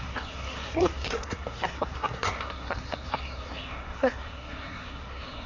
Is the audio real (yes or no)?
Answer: no